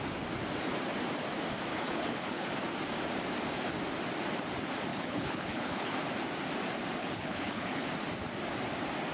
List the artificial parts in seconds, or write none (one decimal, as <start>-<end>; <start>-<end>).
1.7-2.5; 4.9-6.0; 7.0-7.8